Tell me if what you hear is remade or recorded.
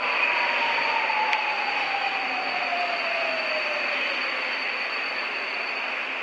recorded